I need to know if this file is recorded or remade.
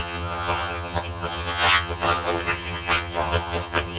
remade